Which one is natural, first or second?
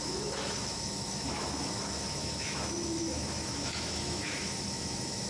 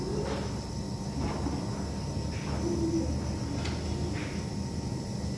second